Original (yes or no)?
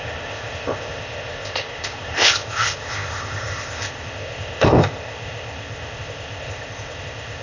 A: no